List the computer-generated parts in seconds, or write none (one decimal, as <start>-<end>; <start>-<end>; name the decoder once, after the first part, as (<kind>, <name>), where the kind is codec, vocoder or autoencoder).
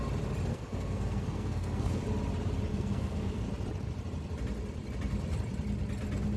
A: 0.5-2.0 (codec, SNAC); 2.7-3.5